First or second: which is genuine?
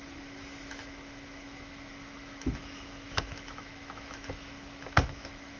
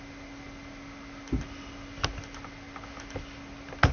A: second